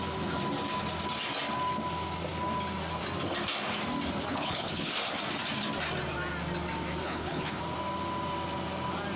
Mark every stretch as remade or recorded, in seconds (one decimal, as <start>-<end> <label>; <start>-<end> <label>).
0.0-4.3 recorded; 4.3-4.9 remade; 4.9-7.0 recorded; 7.0-7.6 remade; 7.6-9.2 recorded